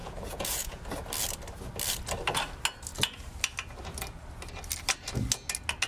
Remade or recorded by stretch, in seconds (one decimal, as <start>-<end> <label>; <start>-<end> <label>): 0.0-0.8 remade; 0.8-5.9 recorded